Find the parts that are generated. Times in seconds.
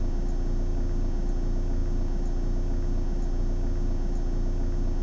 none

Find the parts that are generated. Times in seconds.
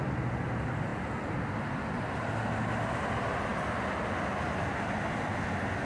none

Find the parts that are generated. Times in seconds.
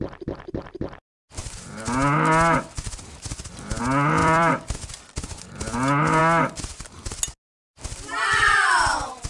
4.2-5.4 (vocoder, BigVGAN v2)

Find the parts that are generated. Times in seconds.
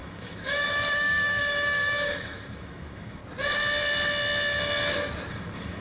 0.0-3.2 (autoencoder, DAC-VAE); 5.3-5.8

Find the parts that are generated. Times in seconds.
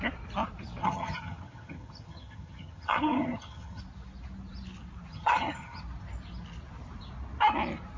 0.8-3.8 (vocoder, HiFi-GAN); 5.1-5.8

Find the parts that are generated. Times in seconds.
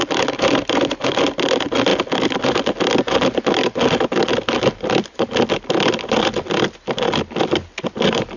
none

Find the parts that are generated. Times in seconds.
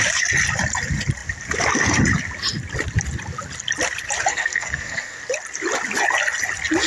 4.3-5.2 (codec, SNAC)